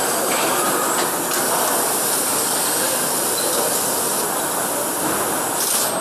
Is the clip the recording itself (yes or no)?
yes